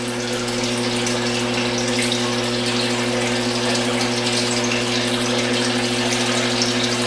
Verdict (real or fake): real